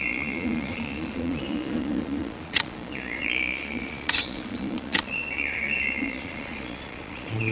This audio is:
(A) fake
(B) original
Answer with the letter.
A